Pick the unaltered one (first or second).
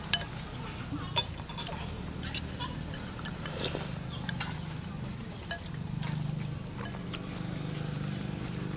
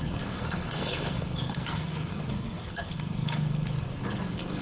first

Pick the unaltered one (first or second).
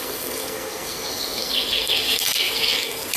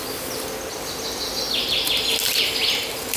second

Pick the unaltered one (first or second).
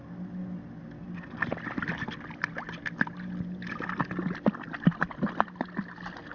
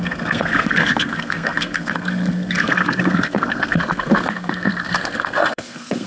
first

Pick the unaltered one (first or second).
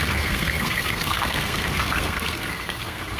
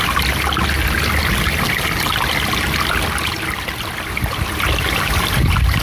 second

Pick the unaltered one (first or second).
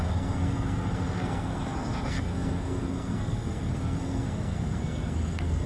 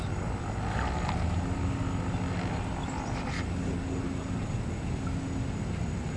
second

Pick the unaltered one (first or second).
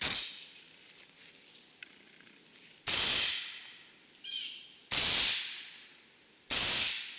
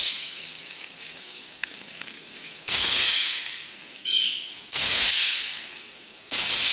first